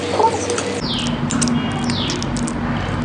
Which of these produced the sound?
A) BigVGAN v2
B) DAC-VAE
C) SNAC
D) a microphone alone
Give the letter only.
D